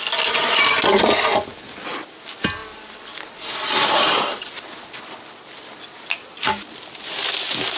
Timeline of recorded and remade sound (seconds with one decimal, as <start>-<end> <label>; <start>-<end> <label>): 0.0-7.8 recorded